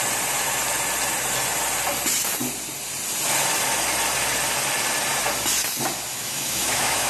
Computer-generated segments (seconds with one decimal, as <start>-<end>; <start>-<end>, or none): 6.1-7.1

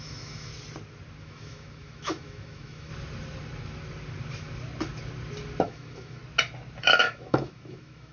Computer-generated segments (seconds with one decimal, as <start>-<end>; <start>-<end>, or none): 0.0-0.5; 1.2-2.9; 5.6-6.2; 6.8-8.1

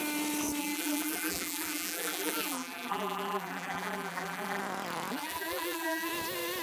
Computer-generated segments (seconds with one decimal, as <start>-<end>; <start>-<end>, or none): 0.6-4.6; 5.1-6.1

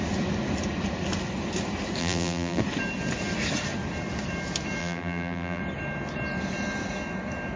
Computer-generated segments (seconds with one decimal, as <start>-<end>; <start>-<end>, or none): 2.0-2.6; 4.8-5.6

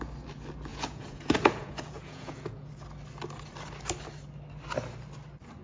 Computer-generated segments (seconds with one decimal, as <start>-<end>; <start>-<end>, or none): 0.7-2.7